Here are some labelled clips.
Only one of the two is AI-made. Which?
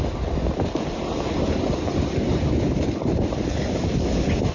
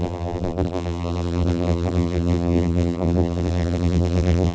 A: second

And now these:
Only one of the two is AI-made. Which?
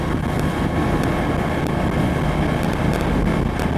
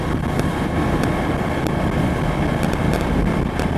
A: second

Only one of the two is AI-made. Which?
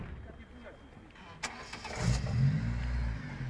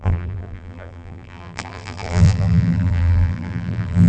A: second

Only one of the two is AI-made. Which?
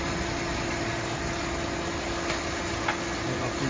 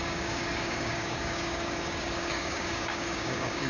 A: second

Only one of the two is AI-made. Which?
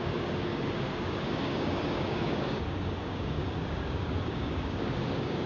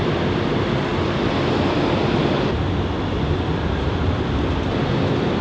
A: first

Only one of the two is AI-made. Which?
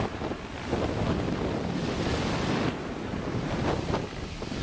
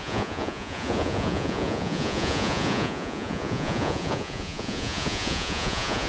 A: second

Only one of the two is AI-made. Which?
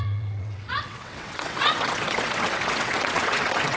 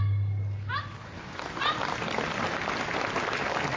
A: first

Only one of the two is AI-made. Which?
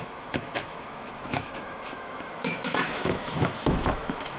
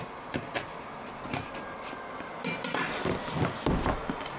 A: first